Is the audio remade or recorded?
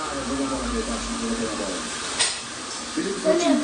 recorded